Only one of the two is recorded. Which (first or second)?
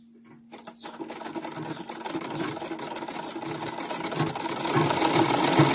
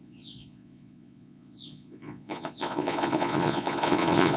first